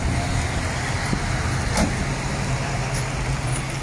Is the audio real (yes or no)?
yes